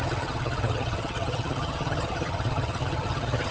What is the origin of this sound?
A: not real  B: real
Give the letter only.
A